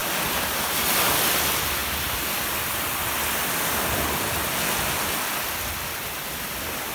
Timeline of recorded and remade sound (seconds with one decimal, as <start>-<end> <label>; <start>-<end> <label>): 0.0-6.9 recorded

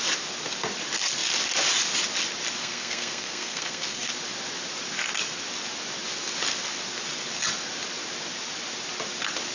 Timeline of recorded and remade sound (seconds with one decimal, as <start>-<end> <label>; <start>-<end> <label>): 0.0-2.6 recorded; 2.6-4.1 remade; 4.1-9.5 recorded

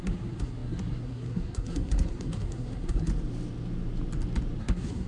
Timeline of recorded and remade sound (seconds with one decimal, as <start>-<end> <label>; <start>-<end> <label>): 0.0-3.1 remade; 3.1-4.6 recorded; 4.6-5.1 remade

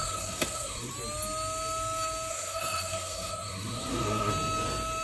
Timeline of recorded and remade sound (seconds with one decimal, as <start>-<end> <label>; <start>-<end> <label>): 0.0-0.9 remade; 0.9-2.3 recorded; 2.3-4.3 remade; 4.3-5.0 recorded